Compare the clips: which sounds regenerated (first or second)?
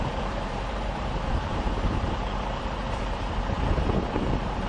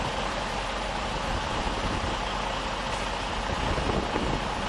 first